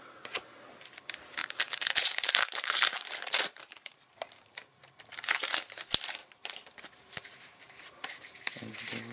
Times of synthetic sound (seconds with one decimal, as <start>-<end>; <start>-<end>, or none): 1.4-4.8; 6.2-8.7